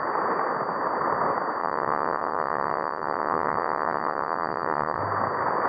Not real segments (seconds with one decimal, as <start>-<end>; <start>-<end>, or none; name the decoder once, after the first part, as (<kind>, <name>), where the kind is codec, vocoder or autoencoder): 1.6-5.0 (vocoder, WaveNeXt)